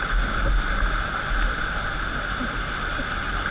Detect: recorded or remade recorded